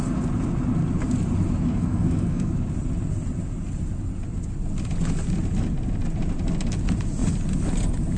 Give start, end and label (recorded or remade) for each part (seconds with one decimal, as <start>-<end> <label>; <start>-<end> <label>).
0.0-1.7 recorded; 1.7-2.5 remade; 2.5-8.2 recorded